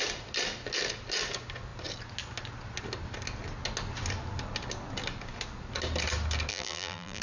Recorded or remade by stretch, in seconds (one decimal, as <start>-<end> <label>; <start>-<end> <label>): 0.0-6.5 recorded; 6.5-7.2 remade